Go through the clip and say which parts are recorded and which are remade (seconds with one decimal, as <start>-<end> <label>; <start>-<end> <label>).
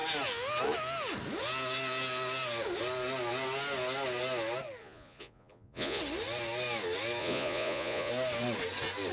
0.0-4.8 recorded; 4.8-6.0 remade; 6.0-7.2 recorded; 7.2-8.1 remade; 8.1-9.1 recorded